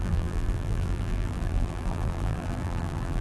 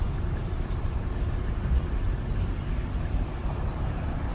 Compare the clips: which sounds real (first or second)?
second